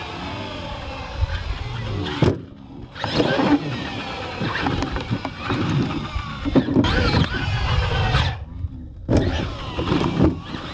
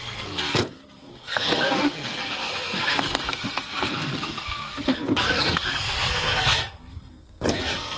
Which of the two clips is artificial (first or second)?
second